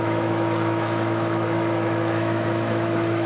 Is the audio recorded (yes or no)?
no